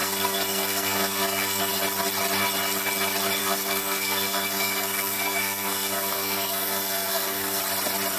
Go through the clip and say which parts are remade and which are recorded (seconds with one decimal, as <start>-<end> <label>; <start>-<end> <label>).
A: 0.0-1.7 remade; 1.7-3.4 recorded; 3.4-7.6 remade; 7.6-8.2 recorded